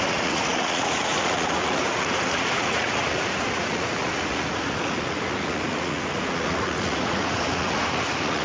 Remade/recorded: remade